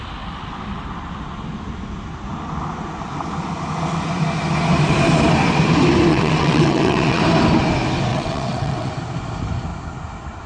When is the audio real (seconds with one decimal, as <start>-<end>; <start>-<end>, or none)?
0.0-6.1; 7.2-8.1; 8.9-10.5